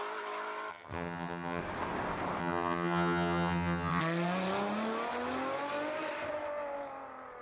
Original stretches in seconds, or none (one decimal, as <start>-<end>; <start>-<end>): 0.0-0.7; 1.6-2.4; 4.0-7.4